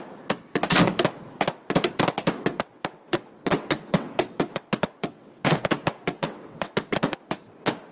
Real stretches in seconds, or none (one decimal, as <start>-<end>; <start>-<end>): 0.0-2.5; 7.2-7.9